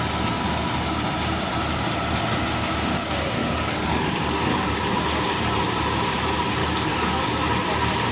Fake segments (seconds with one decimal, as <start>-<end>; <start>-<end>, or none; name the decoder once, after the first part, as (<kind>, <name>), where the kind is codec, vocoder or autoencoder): 3.4-4.7 (codec, DAC); 6.6-7.3